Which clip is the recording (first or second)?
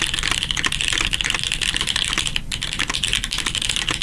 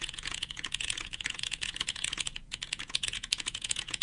first